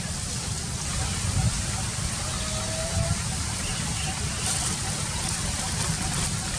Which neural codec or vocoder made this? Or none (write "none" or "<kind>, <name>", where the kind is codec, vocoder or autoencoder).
none